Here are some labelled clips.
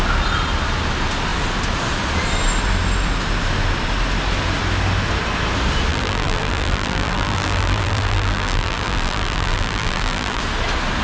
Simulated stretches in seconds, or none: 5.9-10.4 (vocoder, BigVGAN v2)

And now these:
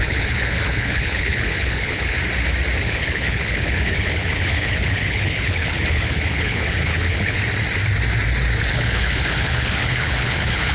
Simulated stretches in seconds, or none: 0.0-2.2 (codec, HILCodec); 2.8-7.4; 8.7-10.7

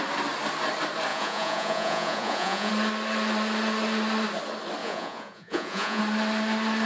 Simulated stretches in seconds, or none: 1.1-2.7 (vocoder, Vocos); 4.8-6.0